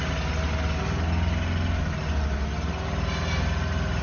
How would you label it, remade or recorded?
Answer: recorded